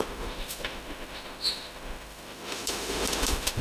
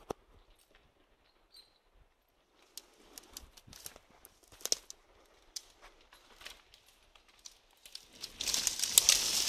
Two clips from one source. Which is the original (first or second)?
second